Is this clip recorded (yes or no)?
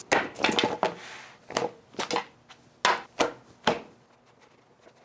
yes